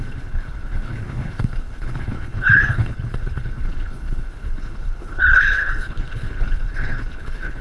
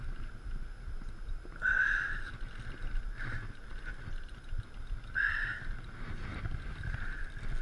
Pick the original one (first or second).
second